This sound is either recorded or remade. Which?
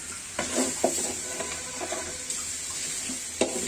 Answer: recorded